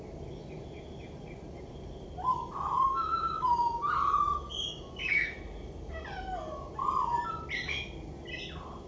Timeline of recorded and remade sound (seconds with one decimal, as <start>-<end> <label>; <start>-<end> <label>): 0.0-2.3 recorded; 2.3-5.4 remade; 5.4-8.9 recorded